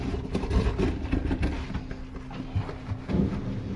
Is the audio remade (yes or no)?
no